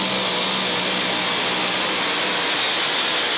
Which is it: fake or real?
real